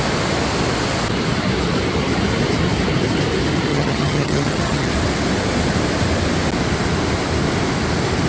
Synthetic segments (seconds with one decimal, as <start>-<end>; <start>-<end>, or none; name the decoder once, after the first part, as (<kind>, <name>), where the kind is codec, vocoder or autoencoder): 3.7-4.9 (vocoder, HiFi-GAN)